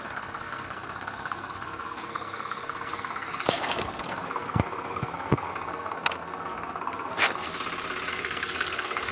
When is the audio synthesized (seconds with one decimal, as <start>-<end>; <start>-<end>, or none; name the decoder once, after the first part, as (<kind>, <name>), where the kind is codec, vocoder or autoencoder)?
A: 0.0-7.5 (codec, SNAC); 8.1-9.1

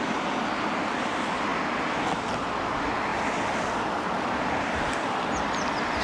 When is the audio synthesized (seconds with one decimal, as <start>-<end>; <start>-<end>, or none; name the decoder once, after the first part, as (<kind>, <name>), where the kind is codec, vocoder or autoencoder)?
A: none

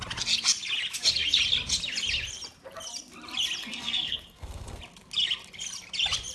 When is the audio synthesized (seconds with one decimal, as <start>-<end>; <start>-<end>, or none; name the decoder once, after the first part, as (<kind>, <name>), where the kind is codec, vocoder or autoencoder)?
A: 3.6-4.8 (codec, SNAC)